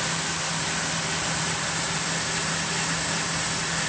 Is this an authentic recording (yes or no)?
yes